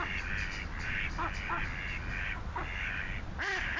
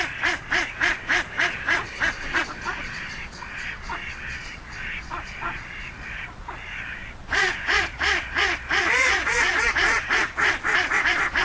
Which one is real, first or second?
first